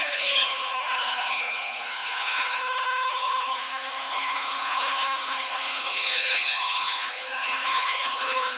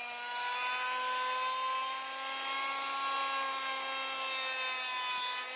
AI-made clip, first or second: first